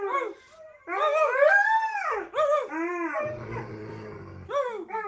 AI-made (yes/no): no